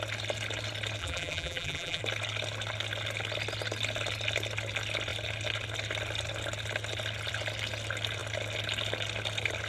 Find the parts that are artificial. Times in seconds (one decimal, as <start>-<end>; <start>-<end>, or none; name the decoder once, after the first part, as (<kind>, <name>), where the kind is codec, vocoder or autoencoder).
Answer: 1.0-2.0 (vocoder, BigVGAN v2)